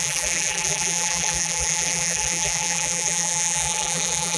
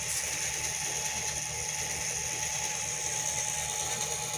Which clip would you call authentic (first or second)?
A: second